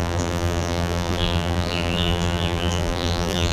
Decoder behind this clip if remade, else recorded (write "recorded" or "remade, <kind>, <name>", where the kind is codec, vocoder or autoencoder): remade, vocoder, BigVGAN v2